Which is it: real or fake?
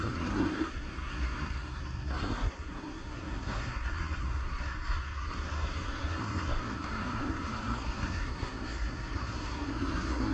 fake